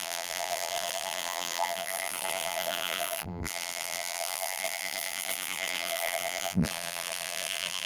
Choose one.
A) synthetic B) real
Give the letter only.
A